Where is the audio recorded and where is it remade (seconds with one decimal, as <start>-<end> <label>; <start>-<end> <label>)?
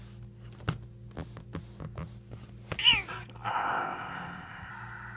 0.0-3.5 recorded; 3.5-4.7 remade; 4.7-5.2 recorded